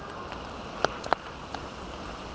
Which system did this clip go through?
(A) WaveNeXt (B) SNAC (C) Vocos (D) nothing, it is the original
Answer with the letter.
D